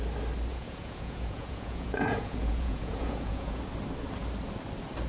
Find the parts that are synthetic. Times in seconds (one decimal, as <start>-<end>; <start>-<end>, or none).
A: 0.5-3.6